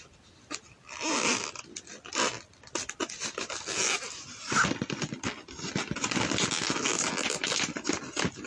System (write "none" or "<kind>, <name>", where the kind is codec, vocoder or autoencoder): none